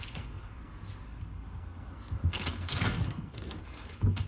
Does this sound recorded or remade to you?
remade